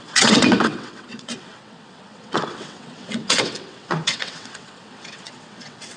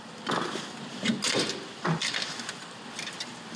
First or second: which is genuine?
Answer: second